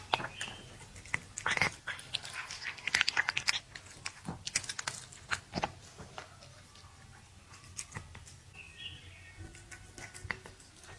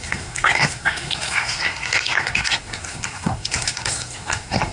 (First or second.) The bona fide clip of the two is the first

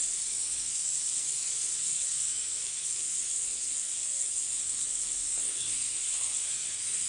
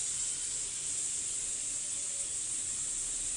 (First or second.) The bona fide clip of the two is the second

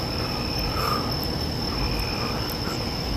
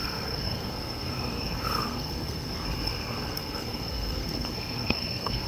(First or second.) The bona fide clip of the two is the first